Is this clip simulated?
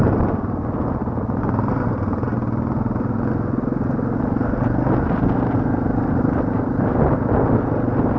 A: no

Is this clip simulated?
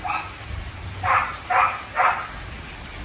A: no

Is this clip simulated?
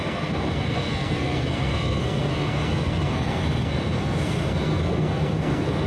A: yes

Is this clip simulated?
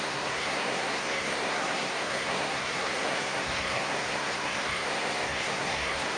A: yes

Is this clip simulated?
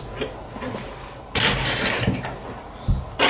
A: no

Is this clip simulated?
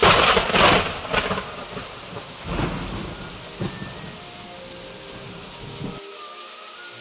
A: no